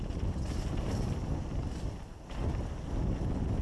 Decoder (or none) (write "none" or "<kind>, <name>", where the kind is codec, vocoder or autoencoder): none